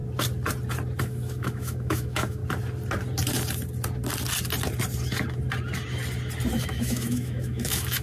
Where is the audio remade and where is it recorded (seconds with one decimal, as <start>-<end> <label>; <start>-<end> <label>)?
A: 0.0-1.0 recorded; 1.0-2.4 remade; 2.4-6.6 recorded; 6.6-8.0 remade